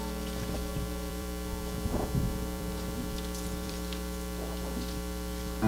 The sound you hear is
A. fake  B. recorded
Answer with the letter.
A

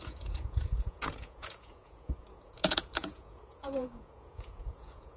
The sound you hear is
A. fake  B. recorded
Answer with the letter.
A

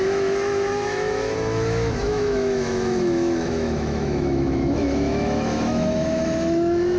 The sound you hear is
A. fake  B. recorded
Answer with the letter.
A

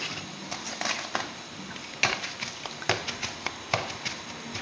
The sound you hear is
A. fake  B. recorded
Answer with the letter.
B